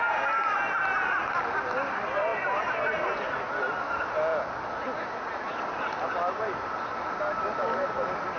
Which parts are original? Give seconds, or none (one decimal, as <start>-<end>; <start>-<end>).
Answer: 0.0-8.4